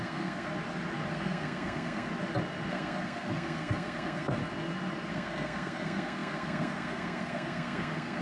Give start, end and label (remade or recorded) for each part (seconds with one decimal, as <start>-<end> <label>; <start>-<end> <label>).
0.0-0.5 remade; 0.5-1.1 recorded; 1.1-2.1 remade; 2.1-2.7 recorded; 2.7-4.4 remade; 4.4-5.1 recorded; 5.1-8.2 remade